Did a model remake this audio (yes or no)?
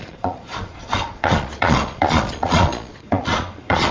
yes